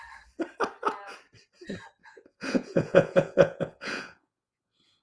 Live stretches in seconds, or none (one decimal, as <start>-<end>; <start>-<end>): 0.0-2.0